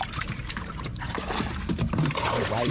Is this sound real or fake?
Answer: fake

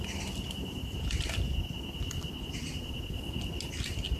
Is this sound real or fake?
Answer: real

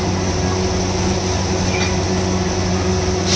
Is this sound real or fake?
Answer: real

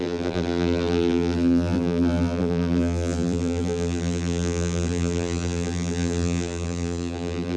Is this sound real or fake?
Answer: fake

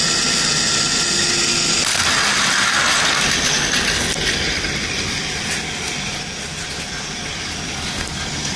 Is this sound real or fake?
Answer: real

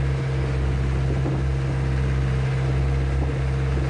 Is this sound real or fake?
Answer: real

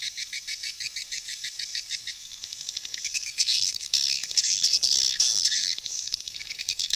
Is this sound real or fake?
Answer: fake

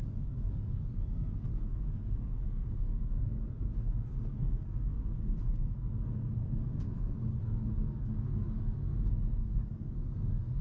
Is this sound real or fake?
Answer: fake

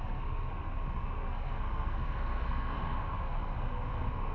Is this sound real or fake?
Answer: fake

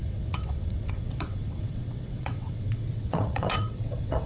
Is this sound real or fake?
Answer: fake